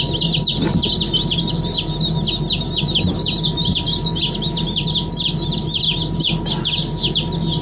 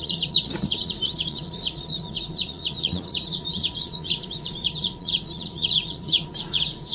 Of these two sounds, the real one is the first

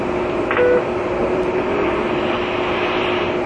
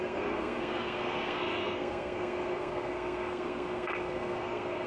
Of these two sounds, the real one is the first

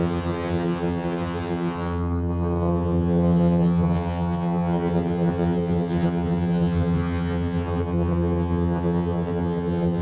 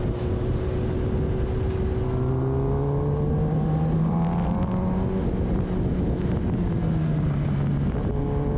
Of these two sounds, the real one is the second